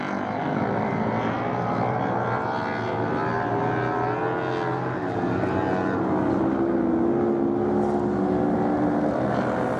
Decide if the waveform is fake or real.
real